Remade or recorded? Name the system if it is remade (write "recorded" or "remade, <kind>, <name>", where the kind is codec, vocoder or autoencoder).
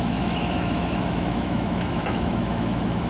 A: remade, autoencoder, DAC-VAE